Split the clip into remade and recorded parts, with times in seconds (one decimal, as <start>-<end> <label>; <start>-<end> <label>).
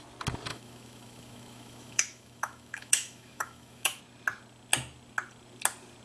0.0-0.5 recorded; 0.5-4.0 remade; 4.0-6.0 recorded